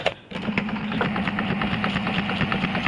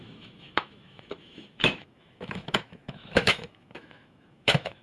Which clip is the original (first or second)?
first